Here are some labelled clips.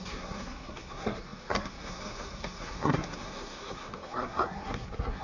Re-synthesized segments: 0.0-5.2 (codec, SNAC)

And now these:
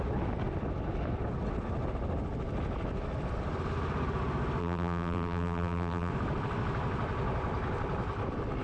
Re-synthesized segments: 4.6-6.1 (vocoder, BigVGAN v2)

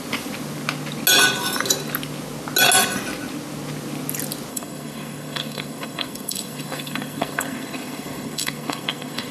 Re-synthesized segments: 4.5-9.3 (codec, SNAC)